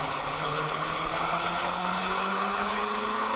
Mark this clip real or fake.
fake